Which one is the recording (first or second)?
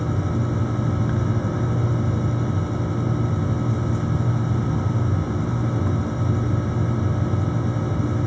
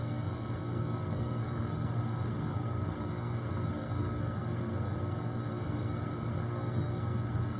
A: first